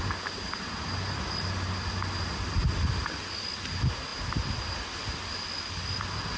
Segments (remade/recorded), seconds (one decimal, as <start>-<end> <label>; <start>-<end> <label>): 0.0-6.4 recorded